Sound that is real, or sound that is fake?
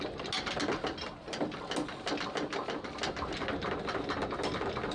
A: real